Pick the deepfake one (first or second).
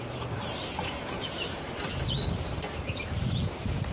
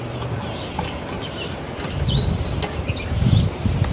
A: first